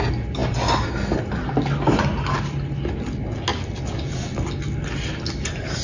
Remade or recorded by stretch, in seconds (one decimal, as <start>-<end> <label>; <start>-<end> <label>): 0.0-5.8 recorded